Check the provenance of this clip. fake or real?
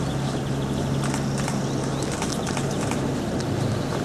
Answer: real